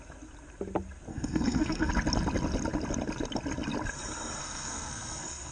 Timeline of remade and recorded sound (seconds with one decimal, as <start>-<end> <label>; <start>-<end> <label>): 0.0-1.1 recorded; 1.1-1.9 remade; 1.9-4.4 recorded; 4.4-5.5 remade